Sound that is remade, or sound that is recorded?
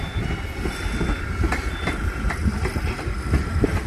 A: recorded